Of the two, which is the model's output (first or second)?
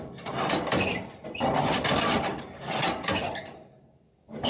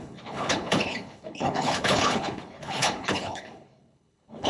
second